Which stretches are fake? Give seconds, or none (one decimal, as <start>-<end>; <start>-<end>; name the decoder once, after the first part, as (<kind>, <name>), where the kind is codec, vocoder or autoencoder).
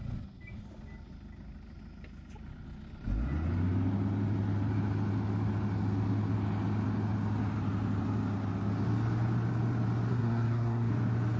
10.1-10.9 (codec, SNAC)